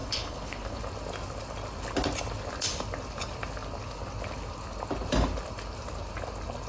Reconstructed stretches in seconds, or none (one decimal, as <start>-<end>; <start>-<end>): 0.0-0.8